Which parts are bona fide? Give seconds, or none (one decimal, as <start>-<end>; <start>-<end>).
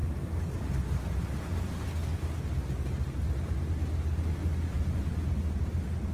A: 0.0-6.1